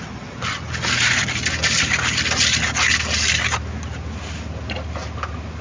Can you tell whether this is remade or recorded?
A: recorded